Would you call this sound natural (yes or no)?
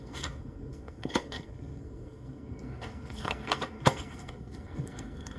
no